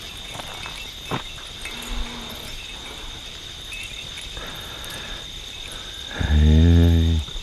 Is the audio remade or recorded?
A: recorded